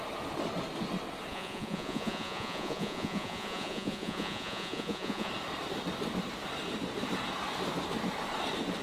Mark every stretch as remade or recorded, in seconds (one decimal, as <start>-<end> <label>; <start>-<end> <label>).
0.0-1.3 recorded; 1.3-5.3 remade; 5.3-8.8 recorded